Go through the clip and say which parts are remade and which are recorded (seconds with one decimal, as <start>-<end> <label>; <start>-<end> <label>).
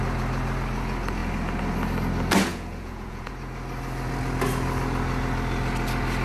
0.0-2.5 recorded; 2.5-3.3 remade; 3.3-6.2 recorded